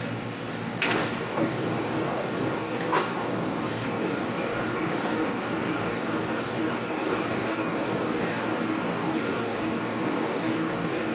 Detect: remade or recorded remade